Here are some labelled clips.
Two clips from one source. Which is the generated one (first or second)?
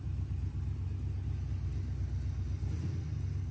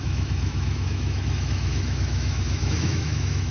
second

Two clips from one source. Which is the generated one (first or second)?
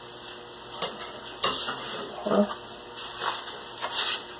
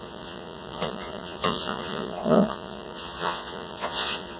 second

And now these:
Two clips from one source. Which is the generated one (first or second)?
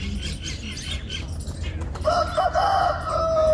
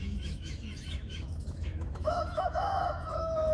second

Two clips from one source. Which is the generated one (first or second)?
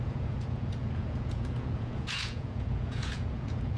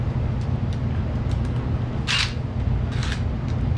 first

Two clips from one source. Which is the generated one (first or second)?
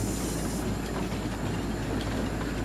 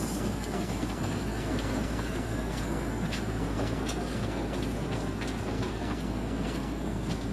second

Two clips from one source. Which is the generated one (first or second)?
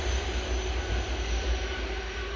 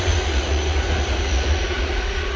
second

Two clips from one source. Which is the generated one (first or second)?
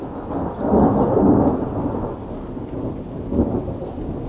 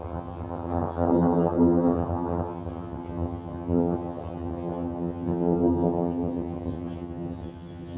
second